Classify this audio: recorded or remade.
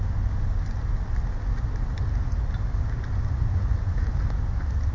recorded